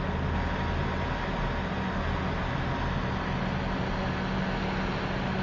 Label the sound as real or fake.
real